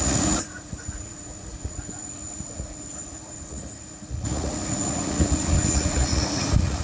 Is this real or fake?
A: fake